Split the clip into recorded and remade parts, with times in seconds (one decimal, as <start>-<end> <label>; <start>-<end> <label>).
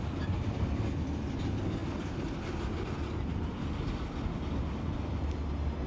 0.0-5.9 recorded